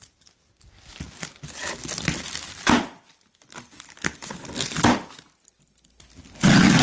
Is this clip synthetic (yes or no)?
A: no